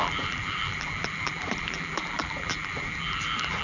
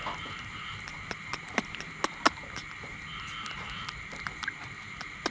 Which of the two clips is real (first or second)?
second